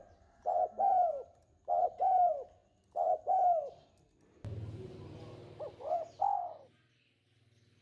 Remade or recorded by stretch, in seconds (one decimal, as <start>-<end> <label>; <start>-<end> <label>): 0.0-7.8 recorded